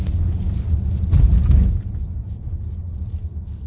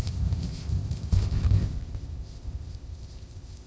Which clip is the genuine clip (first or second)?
first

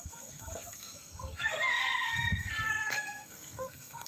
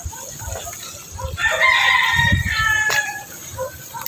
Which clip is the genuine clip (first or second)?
second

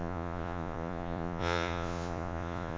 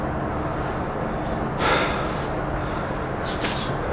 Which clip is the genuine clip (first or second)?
second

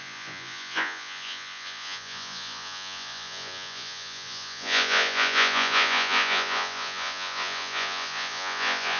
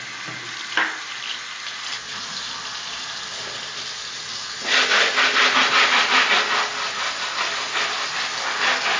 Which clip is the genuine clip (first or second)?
second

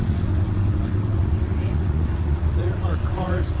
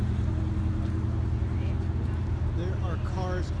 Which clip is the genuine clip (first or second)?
second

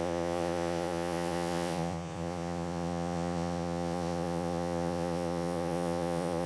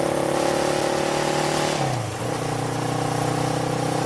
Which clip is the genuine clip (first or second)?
second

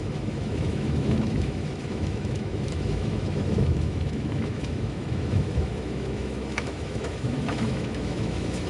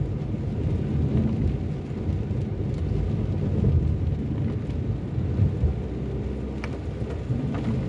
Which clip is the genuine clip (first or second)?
second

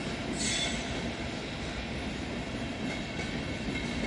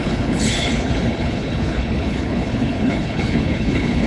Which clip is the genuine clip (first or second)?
first